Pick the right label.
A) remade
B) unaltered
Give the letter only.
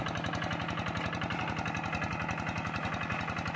B